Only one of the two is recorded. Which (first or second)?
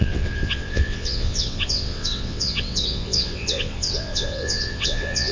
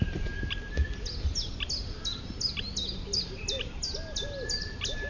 second